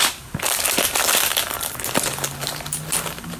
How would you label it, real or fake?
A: real